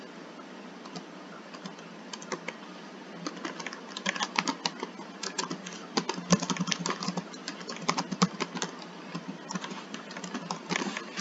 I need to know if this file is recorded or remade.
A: recorded